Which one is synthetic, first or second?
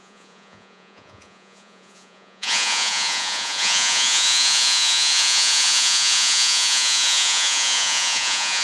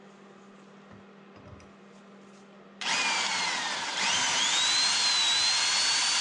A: first